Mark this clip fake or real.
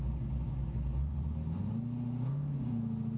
real